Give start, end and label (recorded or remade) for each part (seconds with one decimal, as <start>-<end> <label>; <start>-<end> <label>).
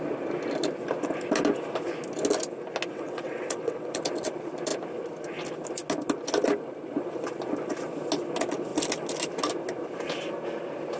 0.0-2.9 recorded; 2.9-4.0 remade; 4.0-11.0 recorded